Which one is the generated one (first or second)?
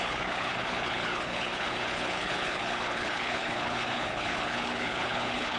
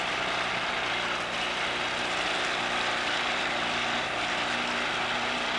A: first